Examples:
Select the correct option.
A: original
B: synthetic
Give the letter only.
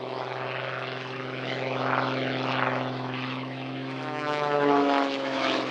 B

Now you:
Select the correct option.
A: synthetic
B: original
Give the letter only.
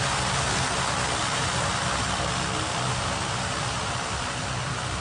B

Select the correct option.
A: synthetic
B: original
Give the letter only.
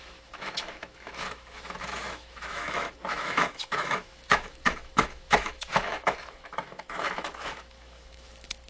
A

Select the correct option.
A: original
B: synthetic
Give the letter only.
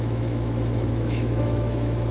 B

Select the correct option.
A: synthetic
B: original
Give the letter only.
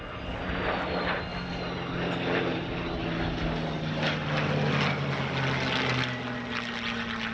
B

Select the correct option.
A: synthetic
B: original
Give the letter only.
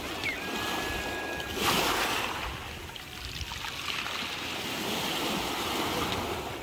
B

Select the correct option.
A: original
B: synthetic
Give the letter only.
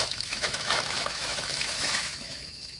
B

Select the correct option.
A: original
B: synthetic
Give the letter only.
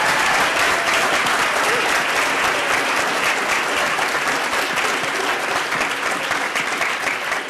A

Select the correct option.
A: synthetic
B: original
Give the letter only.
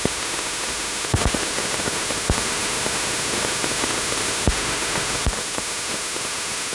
A